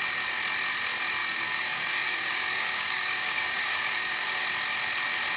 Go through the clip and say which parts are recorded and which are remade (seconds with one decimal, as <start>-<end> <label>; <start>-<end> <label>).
0.0-1.2 recorded; 1.2-4.4 remade; 4.4-5.4 recorded